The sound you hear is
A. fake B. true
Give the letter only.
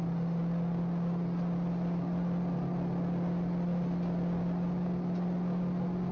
B